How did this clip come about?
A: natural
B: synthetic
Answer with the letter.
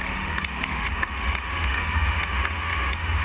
B